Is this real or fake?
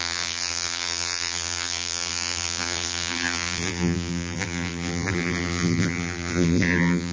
fake